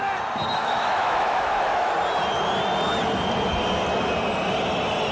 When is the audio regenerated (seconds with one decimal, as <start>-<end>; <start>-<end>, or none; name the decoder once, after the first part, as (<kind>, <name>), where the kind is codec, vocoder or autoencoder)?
0.6-1.9 (autoencoder, DAC-VAE)

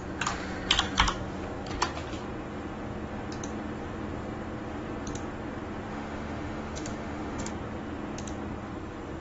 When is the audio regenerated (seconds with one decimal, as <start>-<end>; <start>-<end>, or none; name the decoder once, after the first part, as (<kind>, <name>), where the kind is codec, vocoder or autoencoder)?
5.9-7.5 (autoencoder, DAC-VAE)

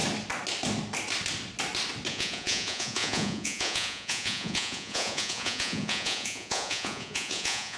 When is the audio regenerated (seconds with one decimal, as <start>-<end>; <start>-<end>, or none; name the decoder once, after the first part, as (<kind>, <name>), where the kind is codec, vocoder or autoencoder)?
2.1-7.8 (vocoder, Vocos)

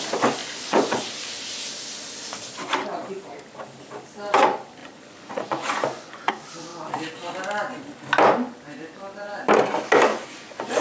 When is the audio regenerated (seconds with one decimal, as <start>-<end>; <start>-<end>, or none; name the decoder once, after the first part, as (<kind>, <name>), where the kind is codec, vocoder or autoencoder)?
0.4-1.0 (vocoder, Vocos); 4.8-6.3; 10.1-10.8

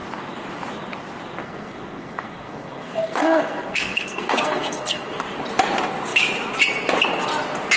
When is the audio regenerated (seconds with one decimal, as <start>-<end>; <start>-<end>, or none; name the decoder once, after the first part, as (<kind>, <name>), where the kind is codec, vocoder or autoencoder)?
1.4-5.1 (codec, SNAC)

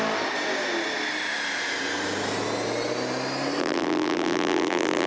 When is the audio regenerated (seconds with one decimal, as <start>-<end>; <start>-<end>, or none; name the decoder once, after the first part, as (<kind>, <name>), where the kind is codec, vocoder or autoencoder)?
3.6-5.1 (vocoder, BigVGAN v2)